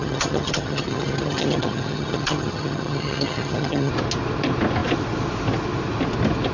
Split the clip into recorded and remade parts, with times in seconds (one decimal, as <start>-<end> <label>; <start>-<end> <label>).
0.0-3.9 remade; 3.9-6.5 recorded